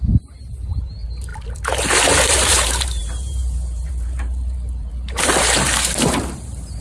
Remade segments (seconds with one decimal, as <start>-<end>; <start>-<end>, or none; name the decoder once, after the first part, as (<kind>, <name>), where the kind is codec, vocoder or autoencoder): 0.0-6.8 (vocoder, BigVGAN v2)